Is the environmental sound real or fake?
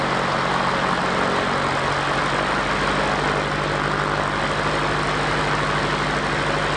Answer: real